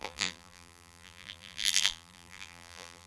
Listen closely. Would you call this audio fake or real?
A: fake